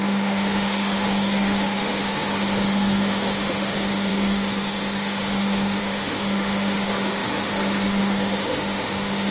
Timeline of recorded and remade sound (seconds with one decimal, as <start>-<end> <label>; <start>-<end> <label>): 0.0-9.3 remade